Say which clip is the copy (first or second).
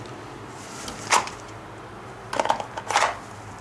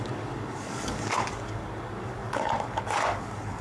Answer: second